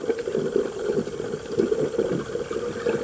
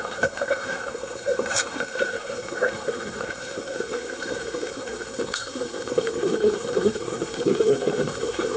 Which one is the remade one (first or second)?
second